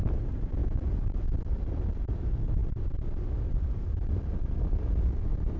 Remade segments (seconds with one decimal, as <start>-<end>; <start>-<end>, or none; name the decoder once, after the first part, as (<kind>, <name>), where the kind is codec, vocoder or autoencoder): 0.0-0.6 (vocoder, BigVGAN v2); 1.6-2.6; 3.9-5.6